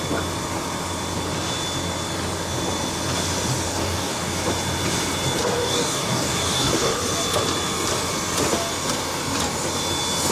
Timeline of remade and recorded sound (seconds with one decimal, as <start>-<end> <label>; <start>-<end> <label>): 0.0-3.7 recorded; 3.7-4.4 remade; 4.4-5.4 recorded; 5.4-7.0 remade; 7.0-10.3 recorded